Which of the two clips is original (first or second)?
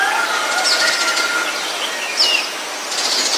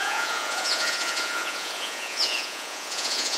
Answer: first